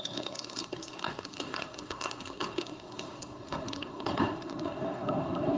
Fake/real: fake